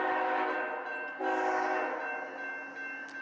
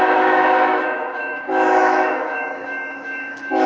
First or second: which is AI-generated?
second